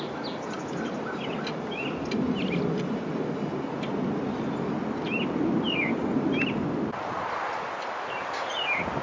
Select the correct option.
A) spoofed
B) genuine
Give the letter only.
B